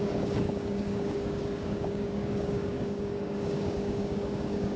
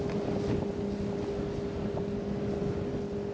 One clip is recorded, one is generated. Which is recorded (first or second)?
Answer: second